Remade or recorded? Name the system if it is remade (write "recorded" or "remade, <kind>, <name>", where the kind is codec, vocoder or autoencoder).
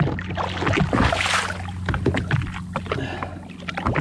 recorded